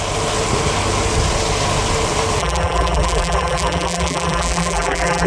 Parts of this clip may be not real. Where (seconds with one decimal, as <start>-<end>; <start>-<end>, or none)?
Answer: 2.4-5.3

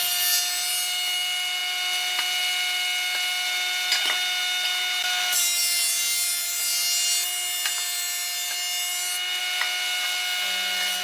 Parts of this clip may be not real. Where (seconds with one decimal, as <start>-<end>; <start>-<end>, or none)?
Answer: none

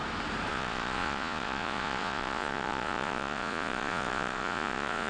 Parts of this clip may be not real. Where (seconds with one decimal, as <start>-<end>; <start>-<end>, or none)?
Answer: 0.5-5.1

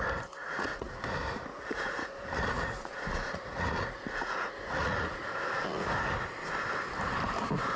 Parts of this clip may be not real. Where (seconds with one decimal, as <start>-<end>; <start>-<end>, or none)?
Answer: 0.4-1.0; 1.5-5.2